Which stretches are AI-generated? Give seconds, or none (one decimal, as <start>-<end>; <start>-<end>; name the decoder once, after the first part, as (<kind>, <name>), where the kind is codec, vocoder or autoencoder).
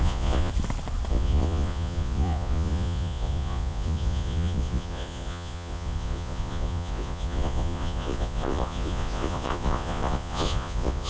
0.0-0.5 (vocoder, Vocos); 1.1-11.1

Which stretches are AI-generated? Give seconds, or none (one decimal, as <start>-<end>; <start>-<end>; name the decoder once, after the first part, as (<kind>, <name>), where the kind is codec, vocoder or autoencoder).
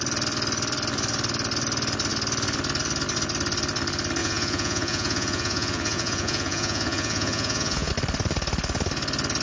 4.2-7.9 (vocoder, Vocos)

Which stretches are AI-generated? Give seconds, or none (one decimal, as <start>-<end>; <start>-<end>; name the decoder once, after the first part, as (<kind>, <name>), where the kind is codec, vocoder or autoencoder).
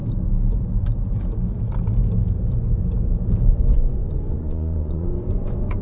3.5-5.8 (vocoder, Vocos)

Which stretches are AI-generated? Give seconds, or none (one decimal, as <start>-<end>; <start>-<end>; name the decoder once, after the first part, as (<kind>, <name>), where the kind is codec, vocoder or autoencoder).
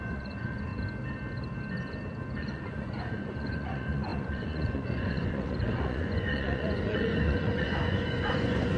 0.0-0.7 (vocoder, Vocos); 2.4-8.8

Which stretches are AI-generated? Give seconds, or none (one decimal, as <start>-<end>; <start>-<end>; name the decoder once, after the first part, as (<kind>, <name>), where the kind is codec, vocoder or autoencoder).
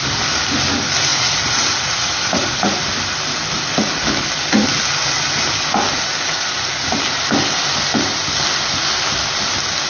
1.1-2.9 (vocoder, Vocos); 5.9-6.9